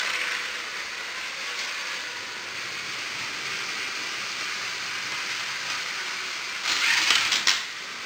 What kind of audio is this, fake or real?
real